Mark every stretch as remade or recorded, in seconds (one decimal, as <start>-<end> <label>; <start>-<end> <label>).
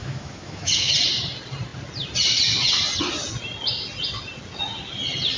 0.0-0.9 remade; 0.9-5.4 recorded